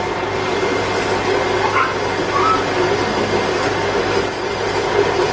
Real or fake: real